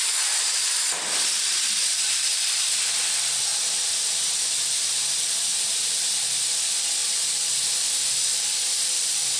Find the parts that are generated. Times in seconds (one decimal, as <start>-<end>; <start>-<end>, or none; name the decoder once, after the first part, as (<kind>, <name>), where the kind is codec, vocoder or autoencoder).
0.0-5.5 (vocoder, BigVGAN v2); 6.1-9.4